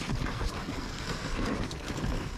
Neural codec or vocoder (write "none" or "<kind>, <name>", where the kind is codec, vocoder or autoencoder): codec, SNAC